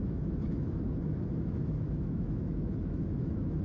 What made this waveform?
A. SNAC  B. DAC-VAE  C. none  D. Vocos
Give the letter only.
B